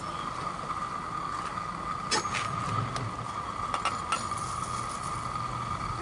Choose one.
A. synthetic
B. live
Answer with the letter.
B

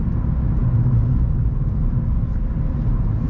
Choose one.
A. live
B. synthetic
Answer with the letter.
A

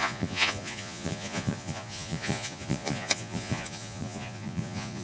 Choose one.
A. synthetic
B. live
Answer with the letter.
A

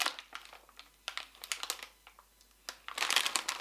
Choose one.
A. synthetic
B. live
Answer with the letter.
B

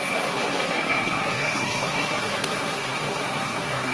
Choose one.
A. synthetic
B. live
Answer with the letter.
A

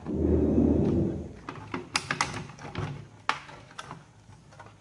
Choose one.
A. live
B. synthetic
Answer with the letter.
A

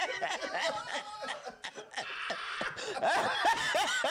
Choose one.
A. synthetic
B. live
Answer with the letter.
A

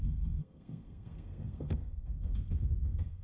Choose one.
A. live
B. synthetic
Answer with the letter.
B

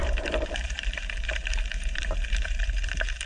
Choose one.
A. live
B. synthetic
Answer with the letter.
B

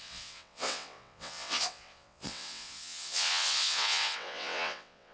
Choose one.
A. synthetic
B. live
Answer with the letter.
A